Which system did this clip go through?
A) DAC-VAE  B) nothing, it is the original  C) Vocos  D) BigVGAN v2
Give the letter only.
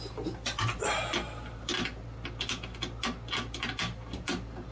B